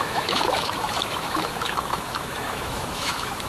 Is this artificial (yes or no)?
yes